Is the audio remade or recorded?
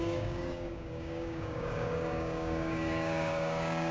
remade